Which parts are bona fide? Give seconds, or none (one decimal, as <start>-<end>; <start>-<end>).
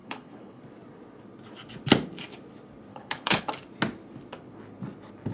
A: 0.6-2.9; 3.5-5.3